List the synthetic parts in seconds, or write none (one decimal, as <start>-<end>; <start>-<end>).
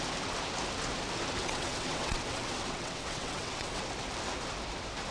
1.4-3.8